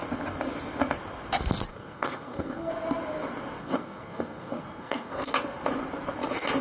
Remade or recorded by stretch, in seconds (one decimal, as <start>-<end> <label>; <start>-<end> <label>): 0.0-1.7 recorded; 1.7-2.7 remade; 2.7-3.6 recorded; 3.6-5.3 remade; 5.3-6.6 recorded

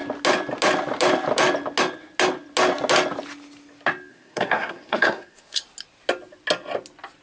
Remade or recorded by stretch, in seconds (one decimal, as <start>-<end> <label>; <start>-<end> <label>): 0.0-4.1 recorded; 4.1-5.6 remade; 5.6-7.2 recorded

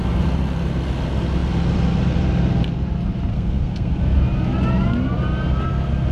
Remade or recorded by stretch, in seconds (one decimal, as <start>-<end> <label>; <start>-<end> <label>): 0.0-3.3 recorded; 3.3-4.0 remade; 4.0-6.1 recorded